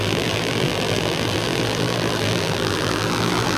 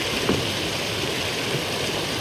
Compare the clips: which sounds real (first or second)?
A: second